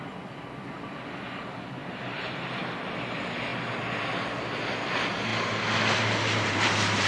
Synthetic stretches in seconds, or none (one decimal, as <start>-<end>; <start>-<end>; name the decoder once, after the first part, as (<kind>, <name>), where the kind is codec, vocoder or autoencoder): 1.8-2.5 (vocoder, BigVGAN v2); 5.3-7.1

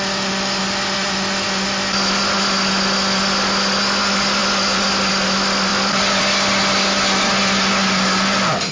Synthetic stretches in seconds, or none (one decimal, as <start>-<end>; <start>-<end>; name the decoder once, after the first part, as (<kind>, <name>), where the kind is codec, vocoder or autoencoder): none

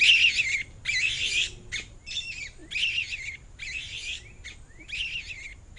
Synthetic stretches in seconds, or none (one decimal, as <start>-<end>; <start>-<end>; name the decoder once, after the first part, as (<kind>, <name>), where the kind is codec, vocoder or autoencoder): 2.6-3.7 (vocoder, BigVGAN v2)

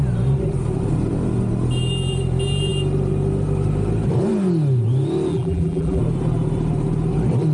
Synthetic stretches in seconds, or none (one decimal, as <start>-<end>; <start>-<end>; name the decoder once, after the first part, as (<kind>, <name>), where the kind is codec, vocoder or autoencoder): 5.3-6.0 (vocoder, BigVGAN v2)